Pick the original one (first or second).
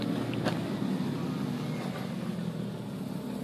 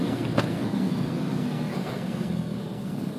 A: first